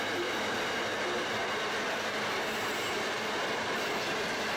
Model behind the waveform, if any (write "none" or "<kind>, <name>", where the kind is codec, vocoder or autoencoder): none